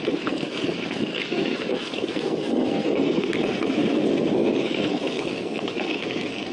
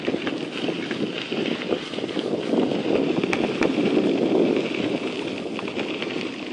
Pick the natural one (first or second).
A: second